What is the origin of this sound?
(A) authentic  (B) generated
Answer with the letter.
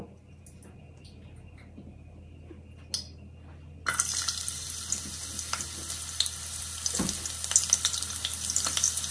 A